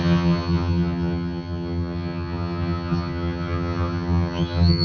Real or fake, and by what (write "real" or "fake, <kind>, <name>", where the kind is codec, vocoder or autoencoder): fake, vocoder, HiFi-GAN